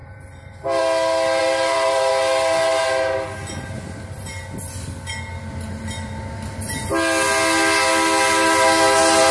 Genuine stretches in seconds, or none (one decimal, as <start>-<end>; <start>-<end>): 0.8-1.4; 2.1-9.3